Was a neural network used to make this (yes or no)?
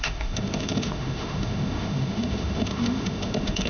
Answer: yes